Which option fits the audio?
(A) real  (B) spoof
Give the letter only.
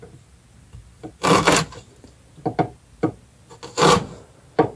A